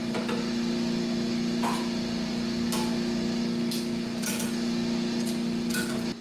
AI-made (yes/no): no